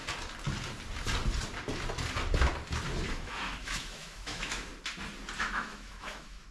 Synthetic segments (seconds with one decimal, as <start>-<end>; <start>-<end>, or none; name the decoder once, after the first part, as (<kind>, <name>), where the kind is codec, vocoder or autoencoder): 3.1-4.7 (autoencoder, DAC-VAE); 5.4-6.5